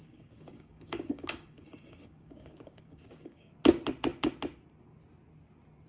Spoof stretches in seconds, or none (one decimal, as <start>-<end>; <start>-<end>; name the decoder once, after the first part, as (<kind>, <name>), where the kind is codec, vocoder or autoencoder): 0.0-3.5 (codec, DAC)